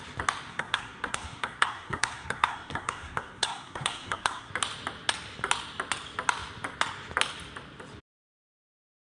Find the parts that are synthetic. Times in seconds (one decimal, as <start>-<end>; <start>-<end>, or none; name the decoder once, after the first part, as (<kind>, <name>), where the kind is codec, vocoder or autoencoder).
0.5-4.5 (codec, SNAC)